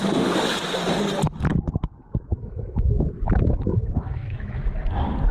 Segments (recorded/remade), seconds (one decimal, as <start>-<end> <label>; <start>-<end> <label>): 0.0-1.5 recorded; 1.5-3.1 remade; 3.1-3.7 recorded; 3.7-4.6 remade; 4.6-5.3 recorded